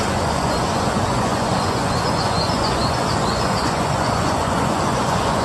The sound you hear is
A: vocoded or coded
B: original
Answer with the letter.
A